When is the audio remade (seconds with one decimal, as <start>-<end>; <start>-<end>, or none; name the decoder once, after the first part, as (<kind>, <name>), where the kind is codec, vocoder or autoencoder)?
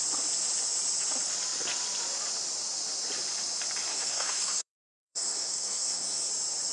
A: 3.9-6.3 (codec, SNAC)